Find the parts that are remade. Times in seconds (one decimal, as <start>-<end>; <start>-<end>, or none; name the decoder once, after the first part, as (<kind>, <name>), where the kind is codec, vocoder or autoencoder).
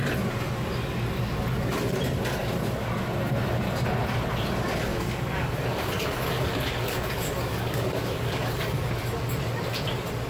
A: 4.9-8.9 (codec, DAC)